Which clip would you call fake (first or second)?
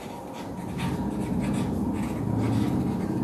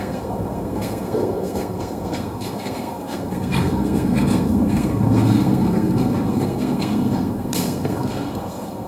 second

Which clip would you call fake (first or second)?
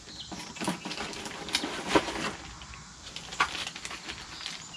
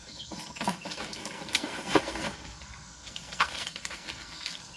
second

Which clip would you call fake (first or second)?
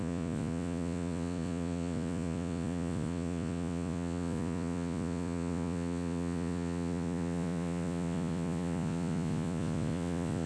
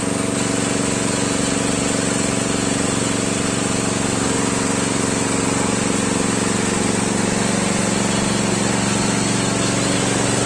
first